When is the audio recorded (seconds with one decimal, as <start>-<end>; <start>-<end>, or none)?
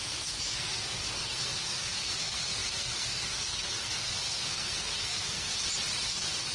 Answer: 5.5-6.1